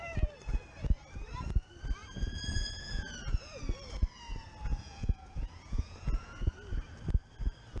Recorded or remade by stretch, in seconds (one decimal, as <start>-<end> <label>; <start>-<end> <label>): 0.0-2.0 recorded; 2.0-3.6 remade; 3.6-4.7 recorded; 4.7-6.5 remade; 6.5-7.8 recorded